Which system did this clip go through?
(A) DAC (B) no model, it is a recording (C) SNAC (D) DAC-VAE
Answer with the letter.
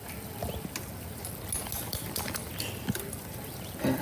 B